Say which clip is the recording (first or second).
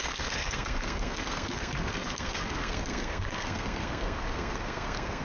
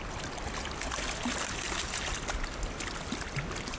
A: second